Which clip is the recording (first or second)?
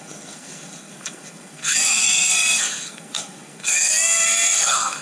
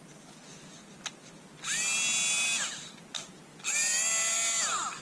second